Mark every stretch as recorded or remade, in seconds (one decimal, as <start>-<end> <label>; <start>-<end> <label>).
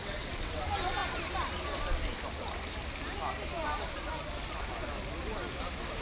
0.0-0.6 remade; 0.6-6.0 recorded